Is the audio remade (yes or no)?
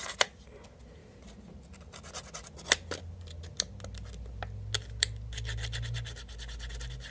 no